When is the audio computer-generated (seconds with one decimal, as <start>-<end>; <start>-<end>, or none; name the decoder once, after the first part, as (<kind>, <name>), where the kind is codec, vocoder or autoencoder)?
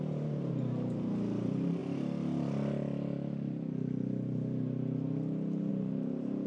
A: 0.0-1.8 (vocoder, BigVGAN v2); 5.7-6.5